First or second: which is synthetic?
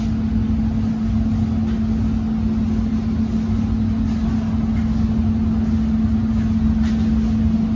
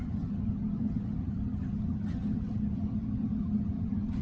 second